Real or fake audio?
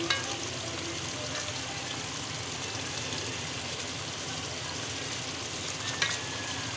real